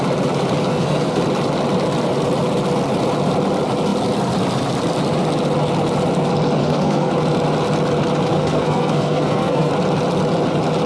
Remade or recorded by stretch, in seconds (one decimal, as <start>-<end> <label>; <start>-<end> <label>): 0.0-0.7 recorded; 0.7-1.2 remade; 1.2-6.6 recorded; 6.6-7.1 remade; 7.1-8.3 recorded; 8.3-9.7 remade; 9.7-10.9 recorded